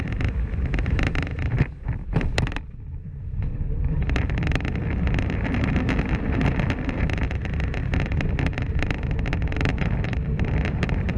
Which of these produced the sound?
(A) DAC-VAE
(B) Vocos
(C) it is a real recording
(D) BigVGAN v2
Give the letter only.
D